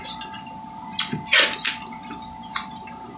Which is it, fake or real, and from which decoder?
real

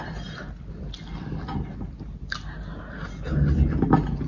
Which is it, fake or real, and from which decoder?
real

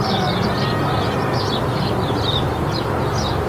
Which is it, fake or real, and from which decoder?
real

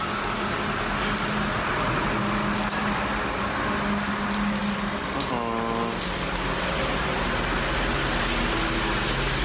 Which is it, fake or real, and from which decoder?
real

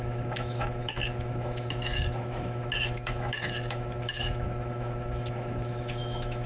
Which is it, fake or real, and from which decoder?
fake, autoencoder, DAC-VAE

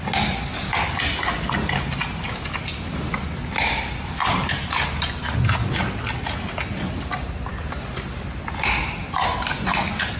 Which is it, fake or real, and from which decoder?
real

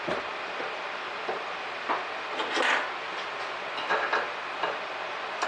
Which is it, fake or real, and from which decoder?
real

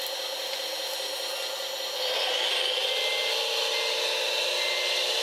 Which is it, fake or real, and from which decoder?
real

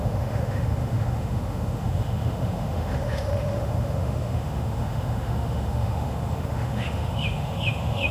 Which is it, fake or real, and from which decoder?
fake, autoencoder, DAC-VAE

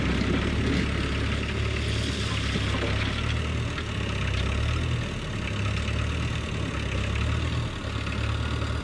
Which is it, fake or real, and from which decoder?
real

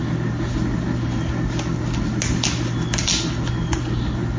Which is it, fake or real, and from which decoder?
real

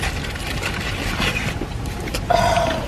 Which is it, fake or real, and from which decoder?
real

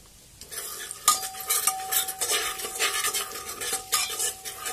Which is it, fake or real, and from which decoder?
real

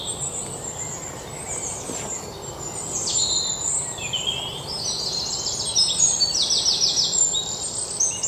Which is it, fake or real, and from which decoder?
real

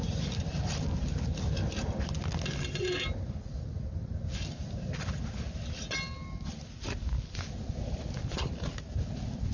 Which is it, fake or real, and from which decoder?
real